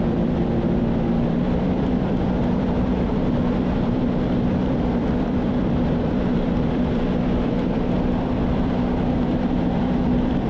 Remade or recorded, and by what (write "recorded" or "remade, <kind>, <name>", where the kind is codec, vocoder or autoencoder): remade, vocoder, BigVGAN v2